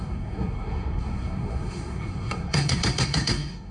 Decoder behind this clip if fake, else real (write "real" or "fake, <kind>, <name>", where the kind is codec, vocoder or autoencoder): fake, codec, SNAC